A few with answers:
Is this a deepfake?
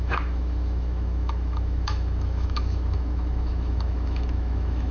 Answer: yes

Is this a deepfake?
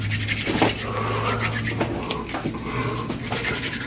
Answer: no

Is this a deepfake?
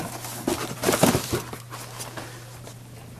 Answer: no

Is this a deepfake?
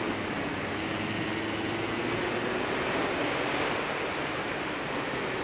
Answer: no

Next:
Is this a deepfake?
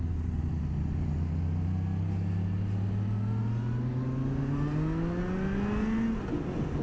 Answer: no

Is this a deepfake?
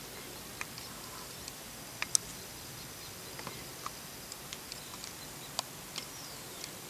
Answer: no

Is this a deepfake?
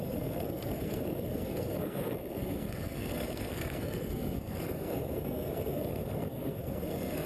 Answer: yes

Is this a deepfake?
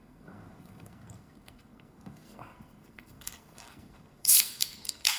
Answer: yes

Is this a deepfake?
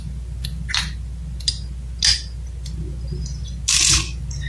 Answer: no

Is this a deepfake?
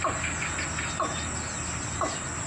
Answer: no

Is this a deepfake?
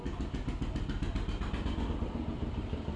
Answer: no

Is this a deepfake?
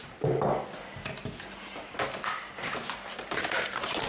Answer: no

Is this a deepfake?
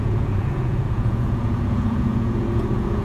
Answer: yes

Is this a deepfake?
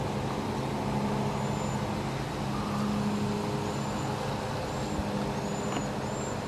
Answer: no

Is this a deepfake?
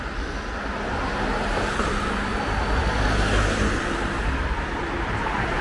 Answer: no